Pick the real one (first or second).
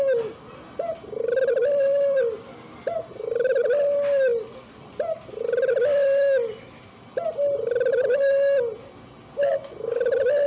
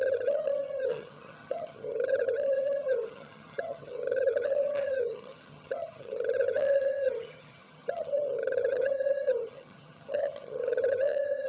first